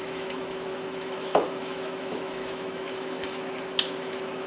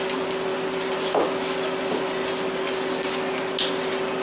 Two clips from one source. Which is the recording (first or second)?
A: second